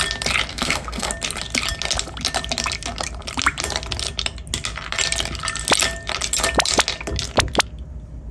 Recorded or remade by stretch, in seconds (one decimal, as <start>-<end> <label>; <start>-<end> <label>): 0.0-0.5 recorded; 0.5-1.1 remade; 1.1-8.3 recorded